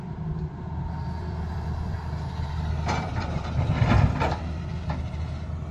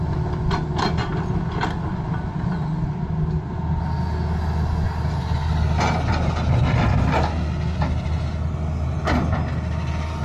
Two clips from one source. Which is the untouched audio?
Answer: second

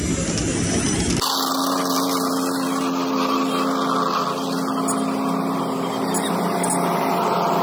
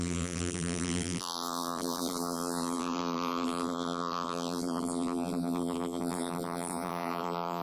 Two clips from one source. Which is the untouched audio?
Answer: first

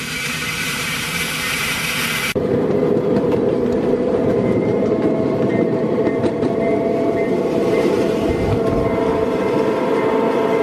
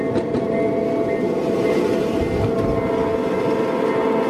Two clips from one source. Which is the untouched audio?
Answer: second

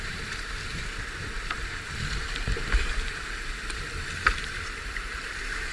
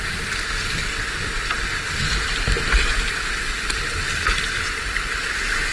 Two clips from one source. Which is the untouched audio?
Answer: second